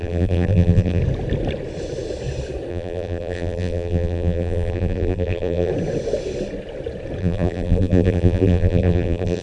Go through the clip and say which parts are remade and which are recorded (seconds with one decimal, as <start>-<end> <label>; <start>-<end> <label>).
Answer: 0.0-1.0 remade; 1.0-2.7 recorded; 2.7-5.7 remade; 5.7-7.2 recorded; 7.2-9.4 remade